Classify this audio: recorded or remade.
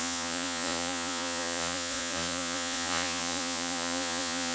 remade